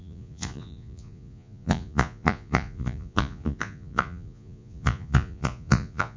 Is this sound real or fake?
fake